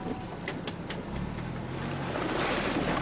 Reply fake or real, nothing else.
real